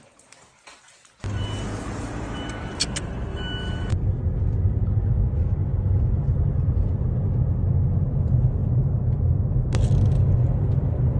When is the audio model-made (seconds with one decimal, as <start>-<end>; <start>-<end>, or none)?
3.3-4.2; 5.7-7.1